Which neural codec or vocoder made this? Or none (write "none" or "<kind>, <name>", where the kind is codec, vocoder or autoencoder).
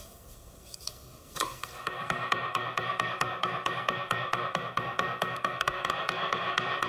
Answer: codec, SNAC